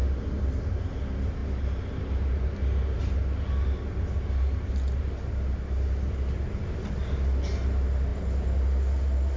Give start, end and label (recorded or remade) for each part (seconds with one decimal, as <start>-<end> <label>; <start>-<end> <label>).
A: 0.0-9.4 recorded